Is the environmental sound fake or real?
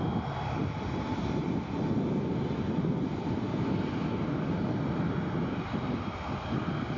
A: real